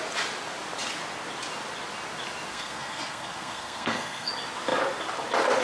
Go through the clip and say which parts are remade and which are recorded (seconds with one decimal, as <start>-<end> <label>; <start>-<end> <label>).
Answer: 0.0-2.5 recorded; 2.5-4.3 remade; 4.3-5.6 recorded